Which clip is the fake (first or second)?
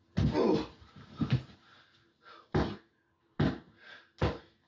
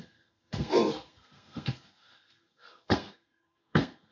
second